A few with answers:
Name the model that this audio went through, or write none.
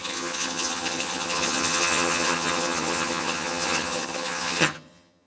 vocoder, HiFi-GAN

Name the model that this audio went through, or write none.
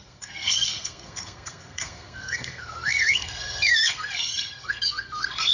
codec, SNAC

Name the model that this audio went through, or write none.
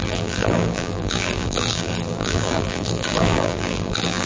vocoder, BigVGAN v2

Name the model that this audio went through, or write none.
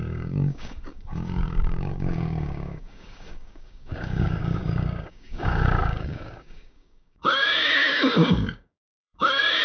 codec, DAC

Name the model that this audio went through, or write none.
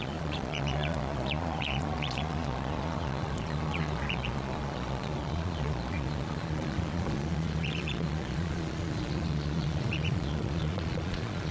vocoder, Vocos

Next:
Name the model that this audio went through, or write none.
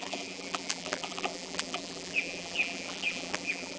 vocoder, BigVGAN v2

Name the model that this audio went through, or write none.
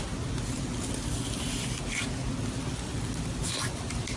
none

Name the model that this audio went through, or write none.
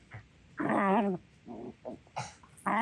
none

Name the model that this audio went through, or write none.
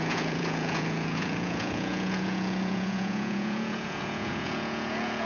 vocoder, Vocos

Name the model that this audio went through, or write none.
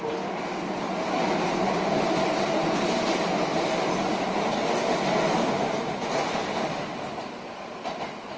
none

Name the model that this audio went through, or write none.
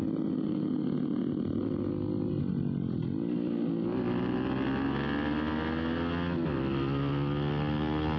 none